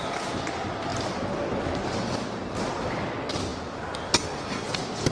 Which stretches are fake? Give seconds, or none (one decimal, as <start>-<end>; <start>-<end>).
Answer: none